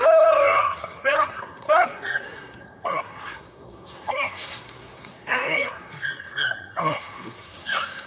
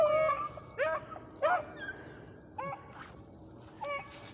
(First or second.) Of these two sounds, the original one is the second